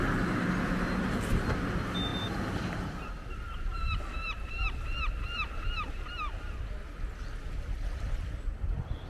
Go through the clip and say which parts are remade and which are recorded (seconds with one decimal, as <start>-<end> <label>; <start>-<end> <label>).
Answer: 0.0-2.1 recorded; 2.1-3.1 remade; 3.1-9.1 recorded